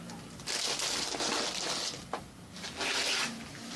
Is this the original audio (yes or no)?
yes